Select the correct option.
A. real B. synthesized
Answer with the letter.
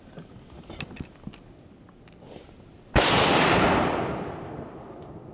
A